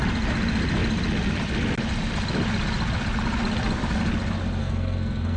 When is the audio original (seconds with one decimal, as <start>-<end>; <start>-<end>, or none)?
0.0-4.6